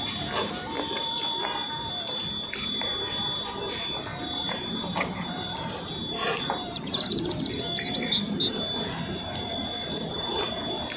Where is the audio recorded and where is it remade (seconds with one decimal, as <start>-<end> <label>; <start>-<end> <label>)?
0.0-4.1 recorded; 4.1-7.5 remade; 7.5-10.3 recorded; 10.3-11.0 remade